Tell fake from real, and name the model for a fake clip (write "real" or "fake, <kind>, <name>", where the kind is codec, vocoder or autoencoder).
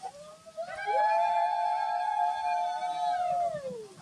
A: real